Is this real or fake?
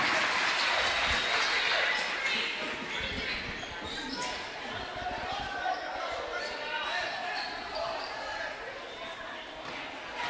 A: real